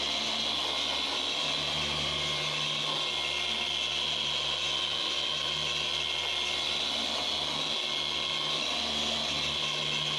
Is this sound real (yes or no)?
yes